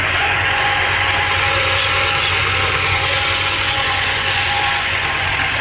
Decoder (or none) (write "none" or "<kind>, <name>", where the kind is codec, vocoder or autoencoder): vocoder, Vocos